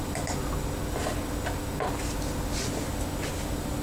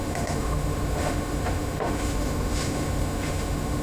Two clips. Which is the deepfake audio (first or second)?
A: second